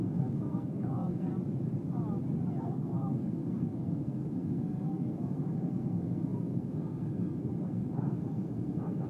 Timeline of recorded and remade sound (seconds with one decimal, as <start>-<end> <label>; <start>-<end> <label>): 0.0-1.3 remade; 1.3-2.6 recorded; 2.6-9.1 remade